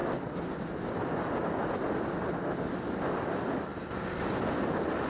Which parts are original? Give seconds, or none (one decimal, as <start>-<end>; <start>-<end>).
0.0-5.1